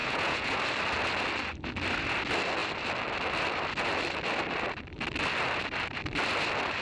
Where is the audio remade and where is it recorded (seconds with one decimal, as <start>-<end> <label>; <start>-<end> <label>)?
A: 0.0-0.6 remade; 0.6-6.8 recorded